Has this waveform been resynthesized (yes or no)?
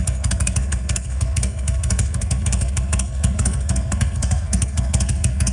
yes